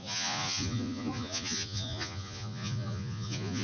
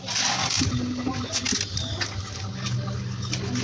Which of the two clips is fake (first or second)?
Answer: first